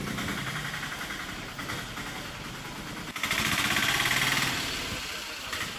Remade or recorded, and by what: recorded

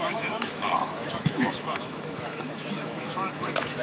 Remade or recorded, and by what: remade, autoencoder, DAC-VAE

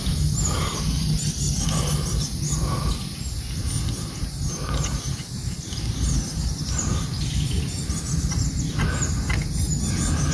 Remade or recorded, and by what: recorded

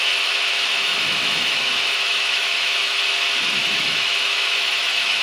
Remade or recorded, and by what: remade, autoencoder, DAC-VAE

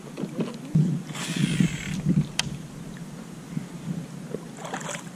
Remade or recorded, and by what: recorded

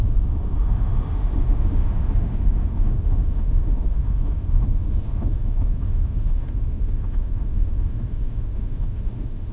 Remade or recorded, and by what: remade, autoencoder, DAC-VAE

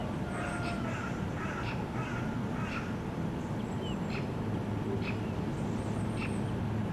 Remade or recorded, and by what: recorded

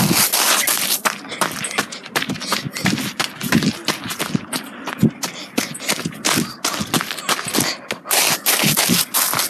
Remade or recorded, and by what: recorded